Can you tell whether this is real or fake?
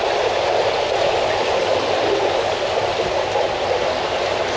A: real